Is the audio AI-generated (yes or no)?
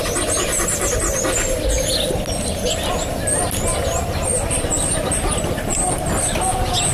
no